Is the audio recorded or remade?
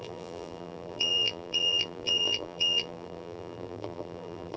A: remade